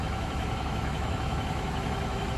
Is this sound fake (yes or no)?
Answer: yes